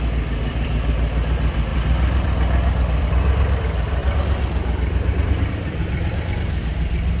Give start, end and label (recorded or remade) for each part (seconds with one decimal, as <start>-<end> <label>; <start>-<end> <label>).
0.0-7.2 remade

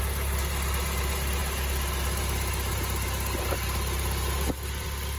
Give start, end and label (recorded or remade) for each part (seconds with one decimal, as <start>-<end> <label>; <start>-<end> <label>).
0.0-5.2 recorded

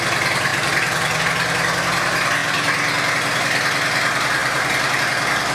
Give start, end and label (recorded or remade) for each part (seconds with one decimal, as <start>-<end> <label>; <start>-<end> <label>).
0.0-0.5 recorded; 0.5-1.2 remade; 1.2-4.4 recorded; 4.4-5.0 remade; 5.0-5.5 recorded

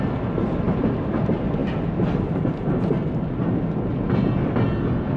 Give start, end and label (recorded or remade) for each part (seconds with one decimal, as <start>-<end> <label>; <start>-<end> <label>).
0.0-5.2 recorded

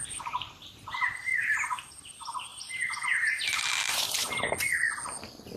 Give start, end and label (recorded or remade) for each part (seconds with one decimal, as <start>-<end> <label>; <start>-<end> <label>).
0.0-1.3 recorded; 1.3-1.9 remade; 1.9-2.5 recorded; 2.5-4.5 remade; 4.5-5.6 recorded

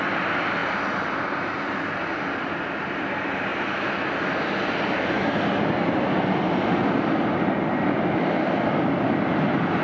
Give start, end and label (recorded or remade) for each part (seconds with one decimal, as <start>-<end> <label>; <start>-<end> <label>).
0.0-9.8 recorded